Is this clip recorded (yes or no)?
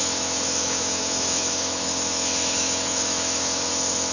no